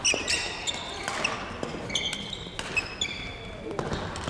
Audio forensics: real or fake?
real